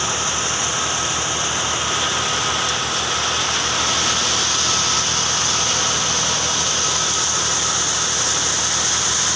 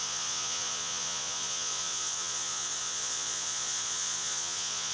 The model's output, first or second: second